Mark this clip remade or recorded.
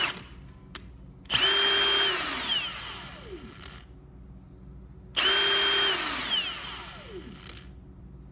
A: recorded